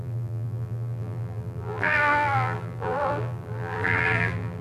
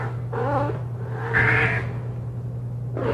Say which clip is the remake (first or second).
first